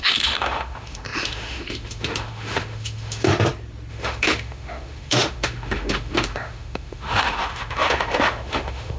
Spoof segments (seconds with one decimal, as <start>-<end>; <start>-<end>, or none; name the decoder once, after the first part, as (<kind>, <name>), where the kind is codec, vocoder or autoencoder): 0.0-3.3 (autoencoder, DAC-VAE); 3.9-9.0